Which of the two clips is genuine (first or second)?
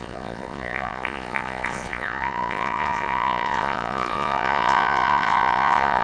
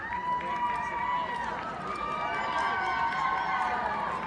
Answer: second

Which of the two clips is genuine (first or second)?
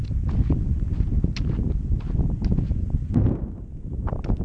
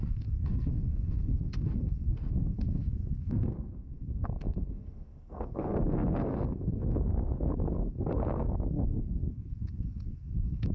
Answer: first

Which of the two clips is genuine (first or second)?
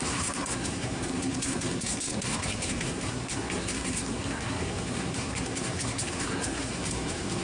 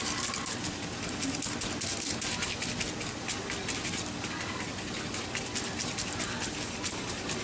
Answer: second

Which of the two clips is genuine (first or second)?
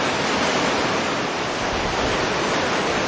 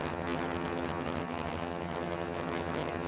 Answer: first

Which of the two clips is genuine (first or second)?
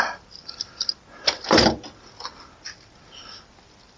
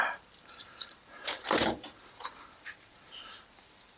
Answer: first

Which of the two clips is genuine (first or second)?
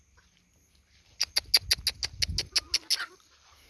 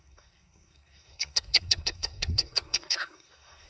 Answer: first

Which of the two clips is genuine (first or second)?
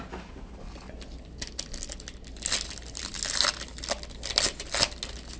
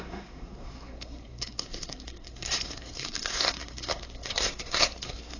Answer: first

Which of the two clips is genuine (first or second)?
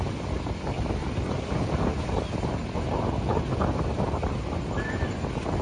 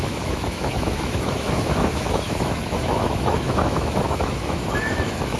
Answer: first